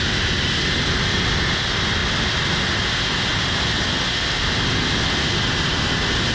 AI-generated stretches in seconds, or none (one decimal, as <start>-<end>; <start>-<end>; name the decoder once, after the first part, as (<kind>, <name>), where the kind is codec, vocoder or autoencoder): none

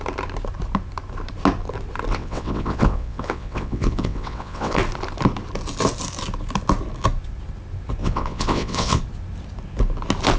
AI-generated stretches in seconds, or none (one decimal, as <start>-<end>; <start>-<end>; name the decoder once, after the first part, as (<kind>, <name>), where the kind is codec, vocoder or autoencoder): 2.1-4.8 (vocoder, WaveNeXt); 8.0-9.0

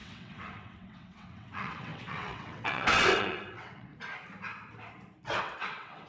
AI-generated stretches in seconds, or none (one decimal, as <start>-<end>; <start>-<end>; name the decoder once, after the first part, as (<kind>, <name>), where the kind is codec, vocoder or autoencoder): 0.0-3.9 (vocoder, WaveNeXt); 5.4-6.1

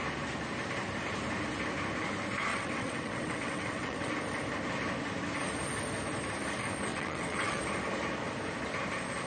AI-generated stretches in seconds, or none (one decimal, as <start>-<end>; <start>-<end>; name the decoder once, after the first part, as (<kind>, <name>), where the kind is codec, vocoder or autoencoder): 2.5-4.1 (vocoder, WaveNeXt); 6.9-7.6